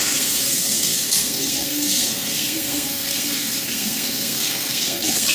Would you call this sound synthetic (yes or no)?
yes